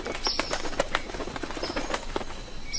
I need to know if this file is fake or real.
real